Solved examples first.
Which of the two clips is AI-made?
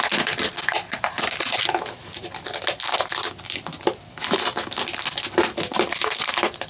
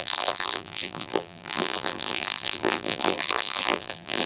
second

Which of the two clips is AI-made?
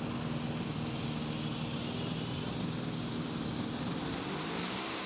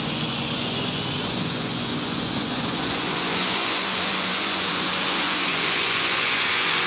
second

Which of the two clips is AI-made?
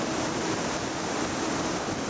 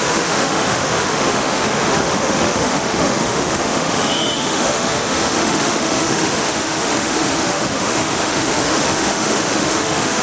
second